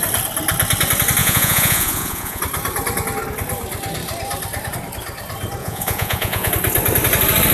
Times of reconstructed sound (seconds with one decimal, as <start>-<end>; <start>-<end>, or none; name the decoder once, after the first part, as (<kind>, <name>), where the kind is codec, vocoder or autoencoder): 1.2-2.4 (vocoder, Vocos); 5.6-6.5